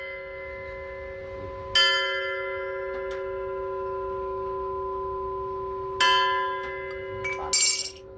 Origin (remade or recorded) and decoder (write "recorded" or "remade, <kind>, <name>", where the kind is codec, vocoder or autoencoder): recorded